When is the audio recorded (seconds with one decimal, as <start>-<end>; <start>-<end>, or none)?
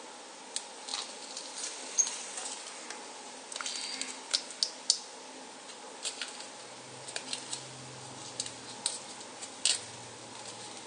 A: 0.0-0.9; 2.3-10.9